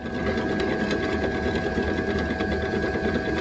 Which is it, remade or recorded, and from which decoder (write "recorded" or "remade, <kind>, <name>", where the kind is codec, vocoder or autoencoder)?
recorded